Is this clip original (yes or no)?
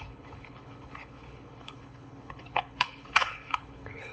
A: no